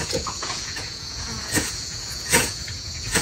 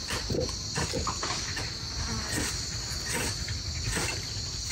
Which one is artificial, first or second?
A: first